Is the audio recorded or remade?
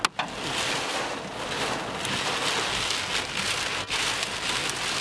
recorded